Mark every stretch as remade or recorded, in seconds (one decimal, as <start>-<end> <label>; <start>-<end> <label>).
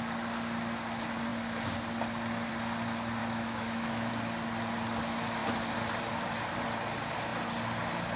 0.0-3.2 recorded; 3.2-4.1 remade; 4.1-8.2 recorded